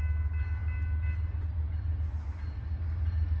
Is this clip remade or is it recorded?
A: recorded